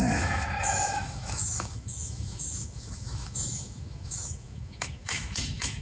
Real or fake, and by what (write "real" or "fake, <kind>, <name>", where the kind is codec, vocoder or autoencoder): fake, autoencoder, DAC-VAE